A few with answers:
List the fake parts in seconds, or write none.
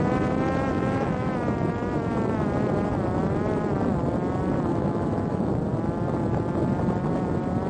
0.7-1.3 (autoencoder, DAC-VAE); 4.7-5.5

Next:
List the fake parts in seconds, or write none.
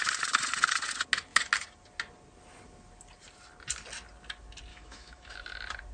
4.7-5.3 (autoencoder, DAC-VAE)